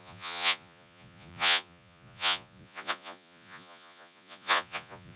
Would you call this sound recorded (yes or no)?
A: no